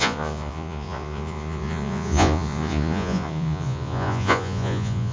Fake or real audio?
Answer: fake